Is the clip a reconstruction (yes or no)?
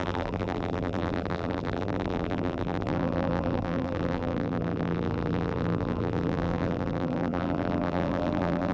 yes